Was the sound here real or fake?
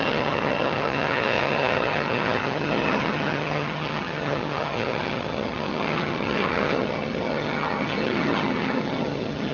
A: fake